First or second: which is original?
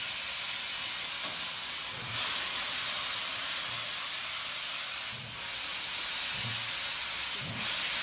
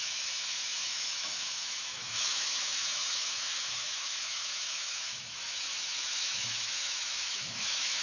first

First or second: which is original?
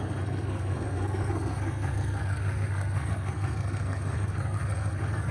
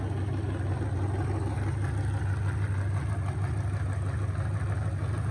second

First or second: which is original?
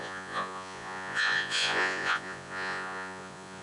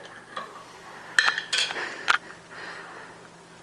second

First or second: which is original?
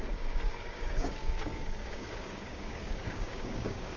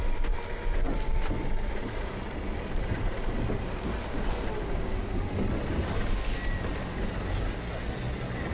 second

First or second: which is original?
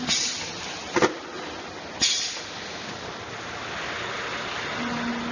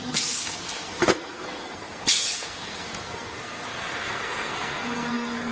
first